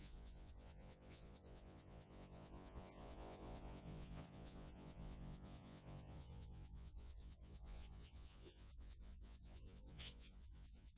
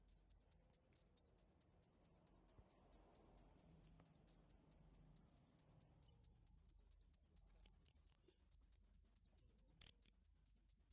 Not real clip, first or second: first